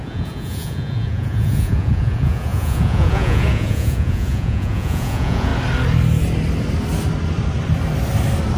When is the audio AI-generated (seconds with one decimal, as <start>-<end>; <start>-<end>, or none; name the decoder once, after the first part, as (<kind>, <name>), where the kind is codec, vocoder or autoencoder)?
0.0-5.5 (vocoder, Vocos)